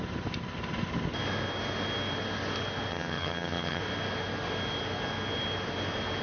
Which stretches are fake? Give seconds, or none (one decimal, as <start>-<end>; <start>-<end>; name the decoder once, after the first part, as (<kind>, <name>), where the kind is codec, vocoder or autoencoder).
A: 2.9-3.8 (vocoder, HiFi-GAN)